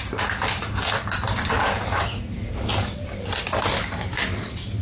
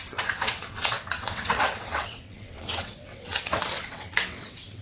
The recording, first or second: first